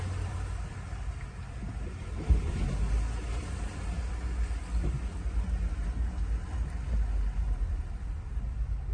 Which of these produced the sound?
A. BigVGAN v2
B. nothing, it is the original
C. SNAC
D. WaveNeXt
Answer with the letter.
B